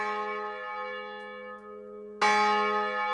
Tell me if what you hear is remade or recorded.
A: recorded